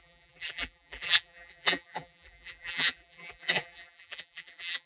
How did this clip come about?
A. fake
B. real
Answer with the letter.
A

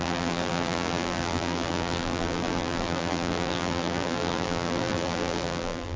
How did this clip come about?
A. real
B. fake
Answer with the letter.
B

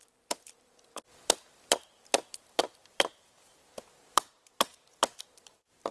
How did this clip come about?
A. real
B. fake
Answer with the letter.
B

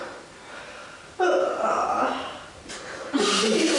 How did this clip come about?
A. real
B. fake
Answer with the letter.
B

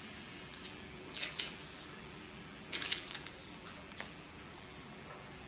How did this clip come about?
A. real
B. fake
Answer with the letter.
B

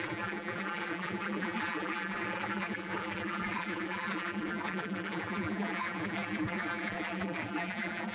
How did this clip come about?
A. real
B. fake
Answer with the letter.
B